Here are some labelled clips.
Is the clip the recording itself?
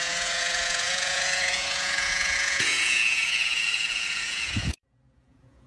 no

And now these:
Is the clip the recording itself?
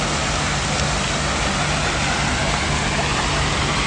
yes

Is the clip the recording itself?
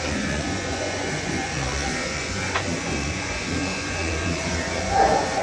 no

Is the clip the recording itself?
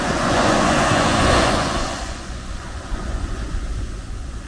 no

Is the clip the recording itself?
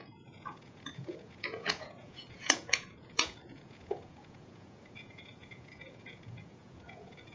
no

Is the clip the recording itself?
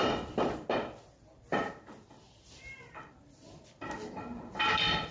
yes